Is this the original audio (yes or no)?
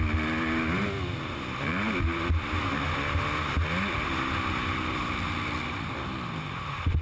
yes